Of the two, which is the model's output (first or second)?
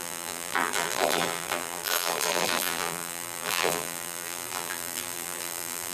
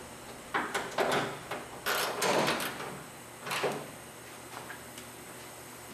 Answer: first